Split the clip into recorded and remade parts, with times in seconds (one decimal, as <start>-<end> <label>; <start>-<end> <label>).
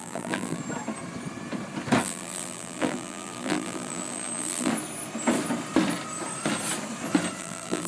0.0-0.6 remade; 0.6-2.0 recorded; 2.0-4.7 remade; 4.7-7.4 recorded; 7.4-7.9 remade